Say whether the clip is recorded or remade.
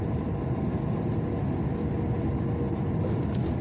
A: recorded